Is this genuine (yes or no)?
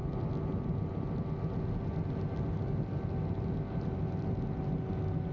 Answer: yes